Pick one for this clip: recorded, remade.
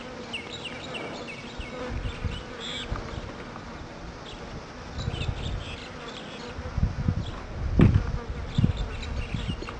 recorded